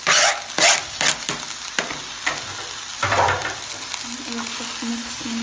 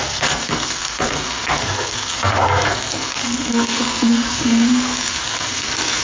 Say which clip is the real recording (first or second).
first